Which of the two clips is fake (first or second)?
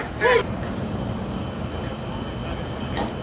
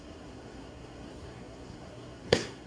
second